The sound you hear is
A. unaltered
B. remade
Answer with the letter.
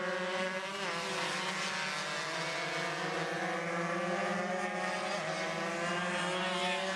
A